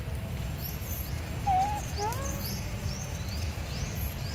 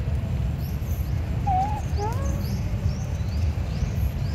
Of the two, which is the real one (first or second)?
first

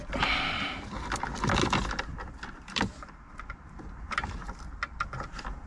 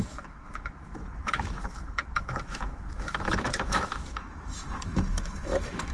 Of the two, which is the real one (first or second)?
first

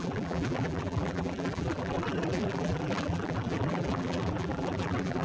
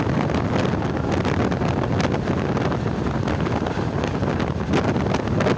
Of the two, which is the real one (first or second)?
second